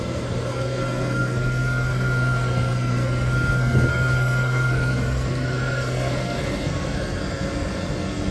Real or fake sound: fake